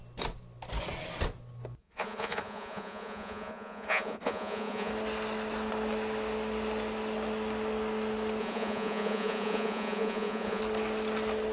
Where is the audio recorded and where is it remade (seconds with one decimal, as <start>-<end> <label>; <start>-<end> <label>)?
0.0-1.8 recorded; 1.8-4.9 remade; 4.9-8.4 recorded; 8.4-10.6 remade; 10.6-11.5 recorded